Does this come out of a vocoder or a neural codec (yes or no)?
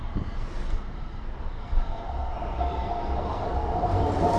yes